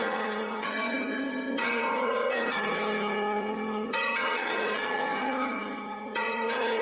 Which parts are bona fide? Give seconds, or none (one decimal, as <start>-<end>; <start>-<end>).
none